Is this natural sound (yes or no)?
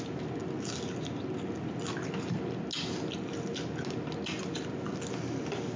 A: yes